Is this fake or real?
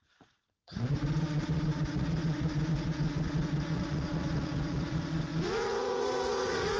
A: fake